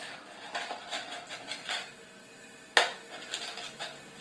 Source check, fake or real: real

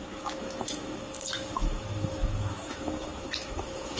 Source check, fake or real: fake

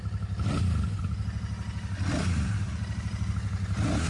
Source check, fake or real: real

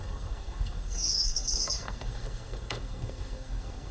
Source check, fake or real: fake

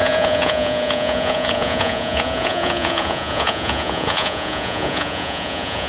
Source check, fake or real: fake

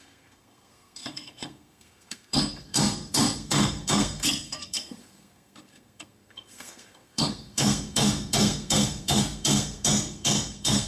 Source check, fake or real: fake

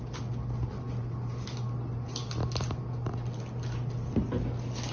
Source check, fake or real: real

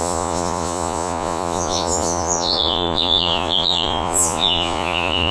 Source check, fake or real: fake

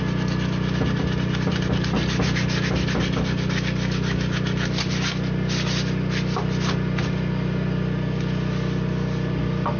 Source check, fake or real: real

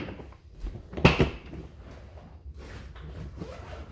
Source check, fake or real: real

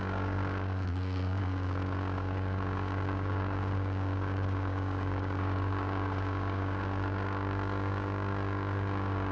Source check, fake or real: fake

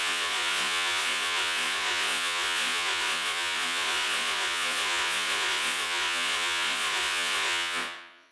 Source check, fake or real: fake